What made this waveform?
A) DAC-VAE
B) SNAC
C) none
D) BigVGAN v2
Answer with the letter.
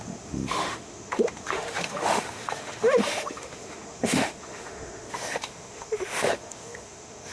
A